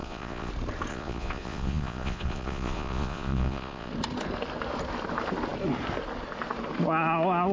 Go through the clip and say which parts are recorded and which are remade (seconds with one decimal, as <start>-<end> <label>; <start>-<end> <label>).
0.0-0.5 remade; 0.5-0.9 recorded; 0.9-3.9 remade; 3.9-7.5 recorded